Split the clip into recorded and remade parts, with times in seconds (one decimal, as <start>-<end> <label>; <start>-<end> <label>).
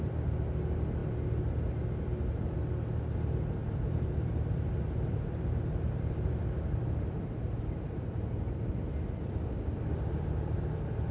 0.0-3.6 recorded; 3.6-8.7 remade; 8.7-11.1 recorded